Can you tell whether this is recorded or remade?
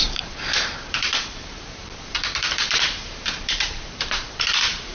remade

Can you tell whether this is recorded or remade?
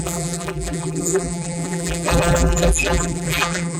remade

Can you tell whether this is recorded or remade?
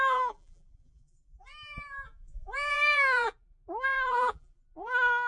remade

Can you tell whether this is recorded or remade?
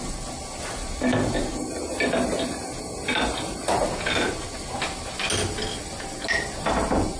recorded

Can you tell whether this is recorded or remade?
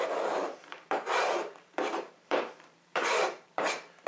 remade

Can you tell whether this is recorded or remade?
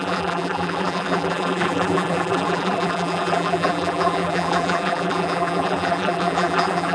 remade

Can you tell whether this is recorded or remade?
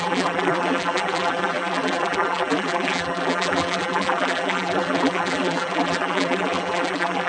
remade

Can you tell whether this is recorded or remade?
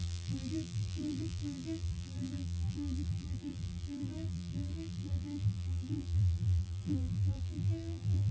remade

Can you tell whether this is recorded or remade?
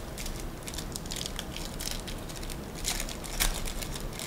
recorded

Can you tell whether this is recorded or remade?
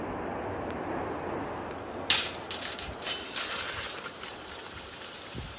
recorded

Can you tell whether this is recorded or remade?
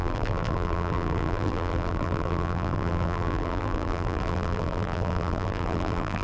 remade